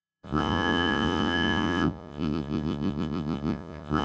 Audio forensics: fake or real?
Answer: fake